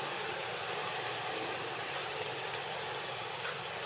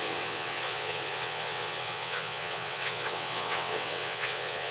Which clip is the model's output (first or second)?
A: second